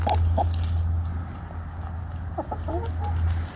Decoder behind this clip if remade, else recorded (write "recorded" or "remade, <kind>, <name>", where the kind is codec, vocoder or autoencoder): recorded